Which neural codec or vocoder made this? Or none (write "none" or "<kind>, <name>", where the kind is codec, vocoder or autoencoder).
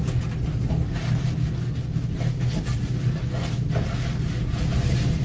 none